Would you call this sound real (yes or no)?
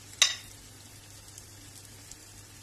yes